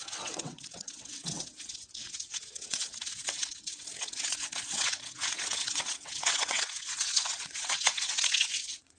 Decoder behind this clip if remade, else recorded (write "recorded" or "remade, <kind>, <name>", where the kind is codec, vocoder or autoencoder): remade, vocoder, WaveNeXt